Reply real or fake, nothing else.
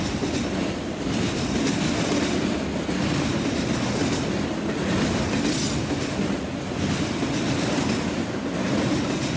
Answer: real